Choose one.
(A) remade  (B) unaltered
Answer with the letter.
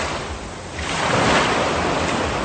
A